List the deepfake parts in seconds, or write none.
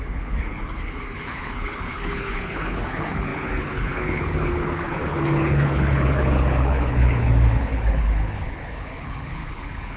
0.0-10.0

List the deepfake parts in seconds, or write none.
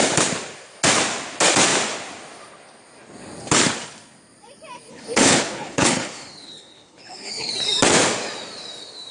4.9-7.5